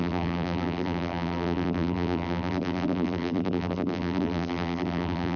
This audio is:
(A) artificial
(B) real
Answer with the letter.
A